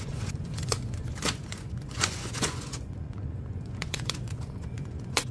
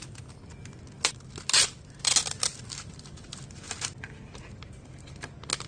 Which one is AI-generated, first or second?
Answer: first